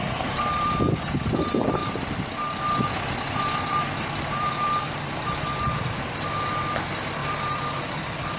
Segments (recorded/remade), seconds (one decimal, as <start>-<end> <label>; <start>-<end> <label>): 0.0-8.4 remade